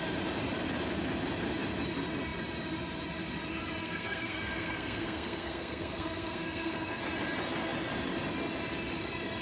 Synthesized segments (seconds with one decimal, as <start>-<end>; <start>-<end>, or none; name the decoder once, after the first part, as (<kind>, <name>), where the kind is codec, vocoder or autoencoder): 3.8-7.0 (codec, SNAC)